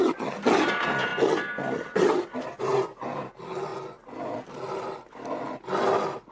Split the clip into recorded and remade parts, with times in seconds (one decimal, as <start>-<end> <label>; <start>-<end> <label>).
0.0-6.3 recorded